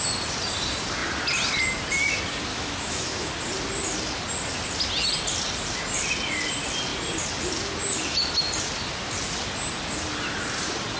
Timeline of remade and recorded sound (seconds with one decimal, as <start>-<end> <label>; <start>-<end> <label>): 0.0-2.5 recorded; 2.5-3.3 remade; 3.3-11.0 recorded